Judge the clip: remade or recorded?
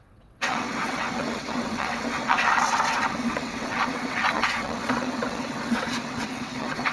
remade